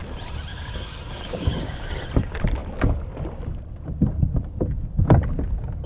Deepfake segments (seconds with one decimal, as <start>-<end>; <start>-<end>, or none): 0.5-1.9